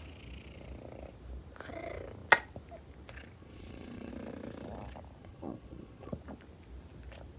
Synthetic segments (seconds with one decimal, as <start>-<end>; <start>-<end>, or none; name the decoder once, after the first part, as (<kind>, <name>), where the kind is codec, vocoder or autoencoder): 3.4-4.1 (vocoder, Vocos); 5.2-6.1